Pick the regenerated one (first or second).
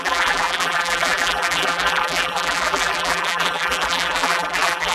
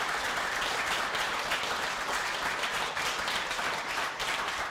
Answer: first